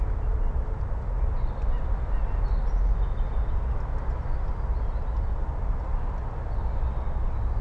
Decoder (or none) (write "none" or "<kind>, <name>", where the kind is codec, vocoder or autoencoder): none